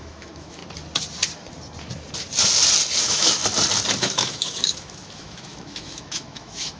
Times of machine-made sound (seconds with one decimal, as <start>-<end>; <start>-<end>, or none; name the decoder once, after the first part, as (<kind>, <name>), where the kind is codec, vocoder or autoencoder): 0.0-0.6 (autoencoder, DAC-VAE); 3.0-3.4; 4.0-6.8